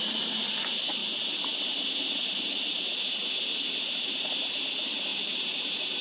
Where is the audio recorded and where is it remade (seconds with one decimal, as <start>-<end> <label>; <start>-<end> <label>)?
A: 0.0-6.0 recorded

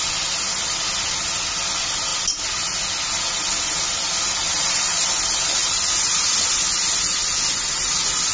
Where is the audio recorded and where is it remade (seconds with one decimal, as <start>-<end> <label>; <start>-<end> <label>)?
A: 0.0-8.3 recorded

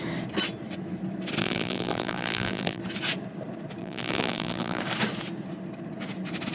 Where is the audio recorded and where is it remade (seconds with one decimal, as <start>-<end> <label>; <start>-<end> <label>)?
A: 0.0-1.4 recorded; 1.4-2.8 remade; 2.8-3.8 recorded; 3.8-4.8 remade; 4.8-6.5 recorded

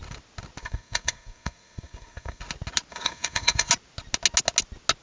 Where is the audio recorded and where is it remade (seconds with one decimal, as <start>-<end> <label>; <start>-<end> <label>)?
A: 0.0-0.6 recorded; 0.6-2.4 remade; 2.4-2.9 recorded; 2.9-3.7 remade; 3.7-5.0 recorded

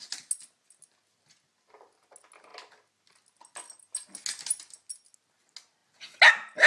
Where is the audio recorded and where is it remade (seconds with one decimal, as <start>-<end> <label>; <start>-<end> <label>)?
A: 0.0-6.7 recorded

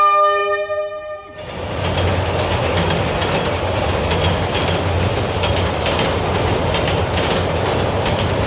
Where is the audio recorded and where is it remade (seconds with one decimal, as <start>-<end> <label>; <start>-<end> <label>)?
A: 0.0-8.5 recorded

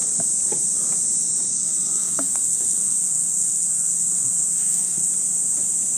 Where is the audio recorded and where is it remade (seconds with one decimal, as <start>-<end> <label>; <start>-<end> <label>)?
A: 0.0-1.5 recorded; 1.5-5.1 remade; 5.1-6.0 recorded

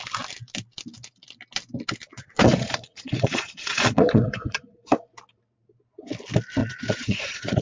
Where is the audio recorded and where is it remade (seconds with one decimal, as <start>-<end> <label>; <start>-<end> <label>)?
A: 0.0-2.1 recorded; 2.1-4.6 remade; 4.6-6.6 recorded; 6.6-7.6 remade